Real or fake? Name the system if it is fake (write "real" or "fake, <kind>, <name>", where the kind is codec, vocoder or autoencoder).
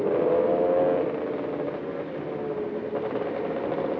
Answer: real